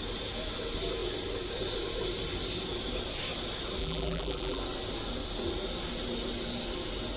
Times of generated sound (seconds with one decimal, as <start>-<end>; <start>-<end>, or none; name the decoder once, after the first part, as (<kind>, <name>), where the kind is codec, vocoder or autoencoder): 3.8-4.6 (vocoder, BigVGAN v2)